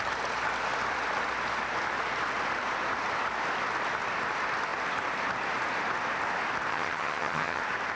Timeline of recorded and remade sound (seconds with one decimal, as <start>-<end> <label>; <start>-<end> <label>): 0.0-6.7 recorded; 6.7-7.6 remade; 7.6-8.0 recorded